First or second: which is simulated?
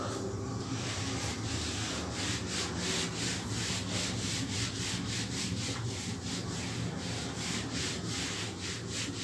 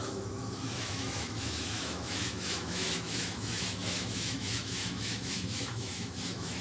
second